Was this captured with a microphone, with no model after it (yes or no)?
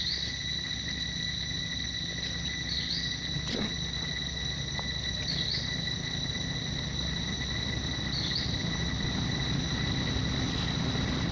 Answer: yes